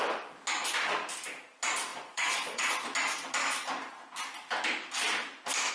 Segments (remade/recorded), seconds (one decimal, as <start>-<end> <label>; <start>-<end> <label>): 0.0-1.9 recorded; 1.9-2.7 remade; 2.7-5.7 recorded